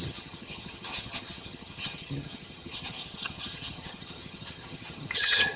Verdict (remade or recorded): remade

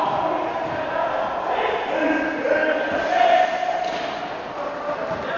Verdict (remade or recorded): recorded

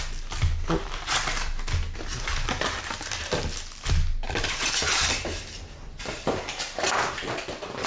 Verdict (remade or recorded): recorded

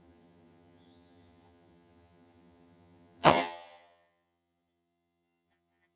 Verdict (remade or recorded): remade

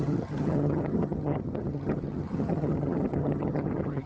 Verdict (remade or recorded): remade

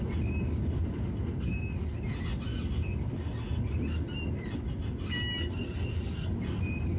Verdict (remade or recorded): recorded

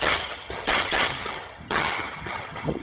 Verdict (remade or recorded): remade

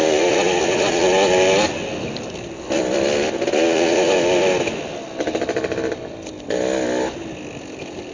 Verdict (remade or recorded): recorded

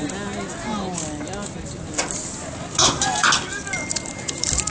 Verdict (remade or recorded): recorded